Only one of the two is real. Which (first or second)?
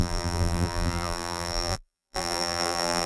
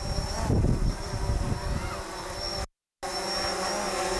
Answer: second